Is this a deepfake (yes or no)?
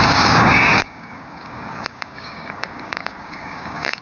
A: yes